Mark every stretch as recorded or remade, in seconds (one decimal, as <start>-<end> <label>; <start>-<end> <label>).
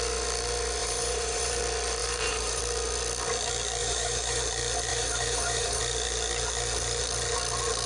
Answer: 0.0-0.8 recorded; 0.8-1.6 remade; 1.6-2.0 recorded; 2.0-2.6 remade; 2.6-3.8 recorded; 3.8-4.4 remade; 4.4-4.9 recorded; 4.9-5.8 remade; 5.8-7.9 recorded